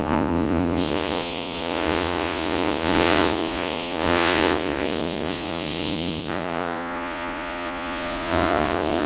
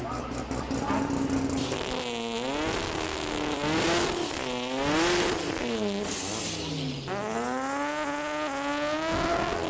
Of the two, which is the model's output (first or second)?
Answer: first